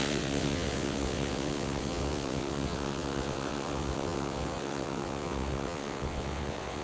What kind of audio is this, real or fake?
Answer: fake